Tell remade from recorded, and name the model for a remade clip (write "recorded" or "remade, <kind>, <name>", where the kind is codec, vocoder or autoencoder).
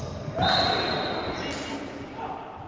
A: recorded